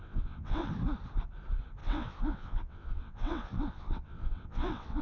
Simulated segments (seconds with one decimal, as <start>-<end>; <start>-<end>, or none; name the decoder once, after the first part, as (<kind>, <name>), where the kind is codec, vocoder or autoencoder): 0.0-0.7 (vocoder, WaveNeXt); 1.8-5.0